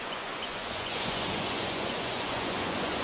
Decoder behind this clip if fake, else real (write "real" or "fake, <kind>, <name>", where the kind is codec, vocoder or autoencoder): fake, vocoder, Vocos